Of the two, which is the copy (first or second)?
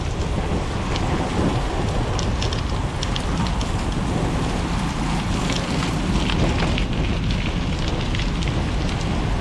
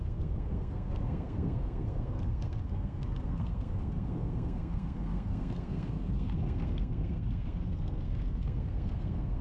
second